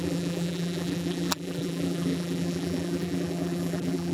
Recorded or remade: remade